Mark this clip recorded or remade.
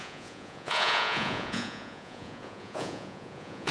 remade